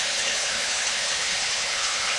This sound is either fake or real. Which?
fake